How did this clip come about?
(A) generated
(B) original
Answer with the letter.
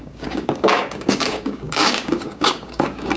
A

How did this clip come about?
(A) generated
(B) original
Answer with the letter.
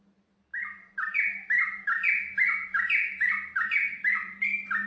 B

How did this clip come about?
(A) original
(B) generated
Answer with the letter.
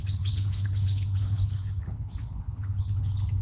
B